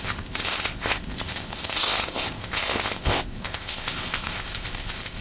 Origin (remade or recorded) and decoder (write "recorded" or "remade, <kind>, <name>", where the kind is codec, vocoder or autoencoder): remade, codec, ZipCodec